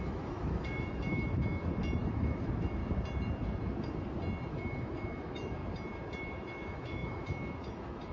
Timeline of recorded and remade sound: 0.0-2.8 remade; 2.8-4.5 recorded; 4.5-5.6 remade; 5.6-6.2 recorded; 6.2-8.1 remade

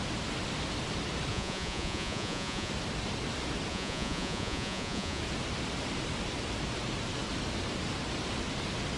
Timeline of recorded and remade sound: 0.0-1.3 recorded; 1.3-2.7 remade; 2.7-3.7 recorded; 3.7-5.2 remade; 5.2-9.0 recorded

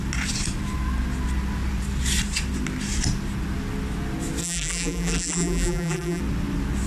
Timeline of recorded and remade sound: 0.0-4.4 recorded; 4.4-6.2 remade; 6.2-6.9 recorded

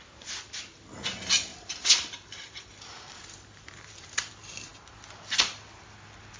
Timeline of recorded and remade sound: 0.0-1.5 recorded; 1.5-4.3 remade; 4.3-6.4 recorded

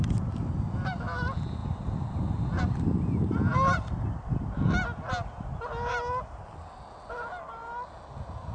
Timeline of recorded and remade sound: 0.0-8.5 recorded

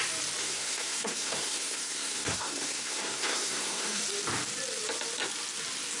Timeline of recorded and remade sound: 0.0-0.4 recorded; 0.4-4.0 remade; 4.0-6.0 recorded